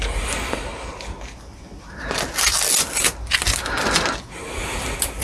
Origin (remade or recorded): recorded